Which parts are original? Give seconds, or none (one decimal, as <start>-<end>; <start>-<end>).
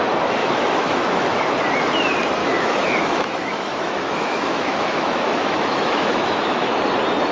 0.0-0.4; 1.4-2.4; 6.8-7.3